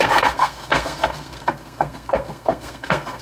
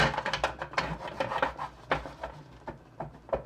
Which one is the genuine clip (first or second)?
second